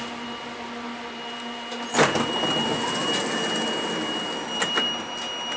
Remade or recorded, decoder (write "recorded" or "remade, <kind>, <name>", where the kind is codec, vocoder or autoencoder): recorded